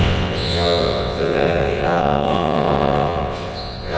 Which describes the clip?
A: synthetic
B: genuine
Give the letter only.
A